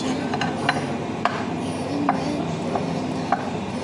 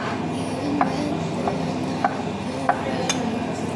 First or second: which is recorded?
second